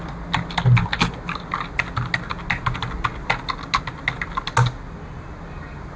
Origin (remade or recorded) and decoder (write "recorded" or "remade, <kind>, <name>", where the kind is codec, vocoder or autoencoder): recorded